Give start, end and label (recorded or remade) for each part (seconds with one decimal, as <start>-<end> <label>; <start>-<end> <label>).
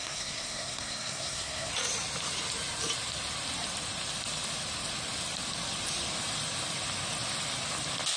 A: 0.0-1.7 remade; 1.7-8.2 recorded